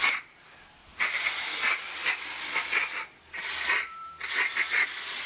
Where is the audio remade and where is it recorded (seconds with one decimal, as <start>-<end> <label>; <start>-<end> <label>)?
0.0-2.0 recorded; 2.0-5.3 remade